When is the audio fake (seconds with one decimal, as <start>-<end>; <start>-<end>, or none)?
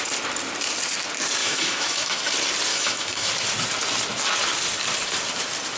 1.4-2.2; 2.7-3.3